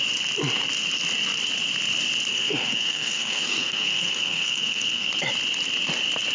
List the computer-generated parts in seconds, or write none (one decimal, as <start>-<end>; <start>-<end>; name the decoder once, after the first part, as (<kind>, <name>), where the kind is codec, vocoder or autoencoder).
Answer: 2.3-5.1 (codec, SNAC)